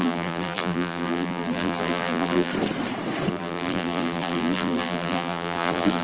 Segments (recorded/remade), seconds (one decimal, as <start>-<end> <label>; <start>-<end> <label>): 0.0-2.5 remade; 2.5-3.3 recorded; 3.3-6.0 remade